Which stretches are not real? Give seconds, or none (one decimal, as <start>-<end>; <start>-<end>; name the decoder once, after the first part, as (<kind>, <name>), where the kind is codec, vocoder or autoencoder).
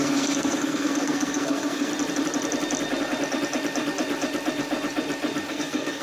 0.0-1.9 (codec, SNAC); 5.5-6.0